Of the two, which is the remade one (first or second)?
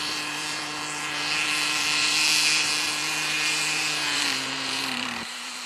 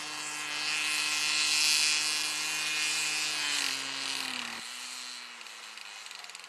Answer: first